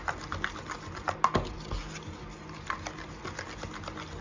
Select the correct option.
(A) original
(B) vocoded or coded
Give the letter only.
A